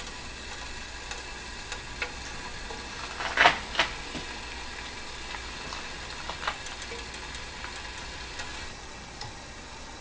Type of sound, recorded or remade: recorded